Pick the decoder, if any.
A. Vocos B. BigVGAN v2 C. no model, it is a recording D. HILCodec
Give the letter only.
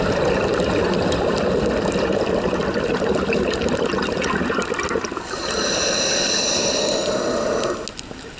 C